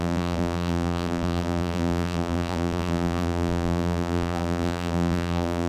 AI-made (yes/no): yes